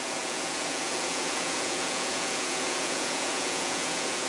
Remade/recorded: remade